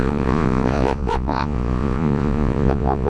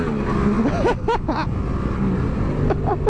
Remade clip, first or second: first